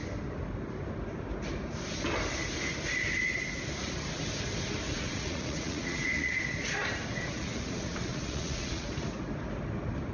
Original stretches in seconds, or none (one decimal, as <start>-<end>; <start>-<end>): 0.0-4.9; 6.3-7.1; 8.9-10.1